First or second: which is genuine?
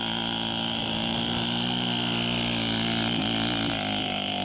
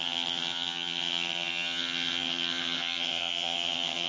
first